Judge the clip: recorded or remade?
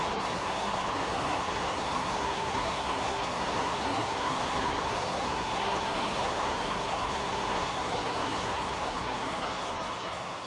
remade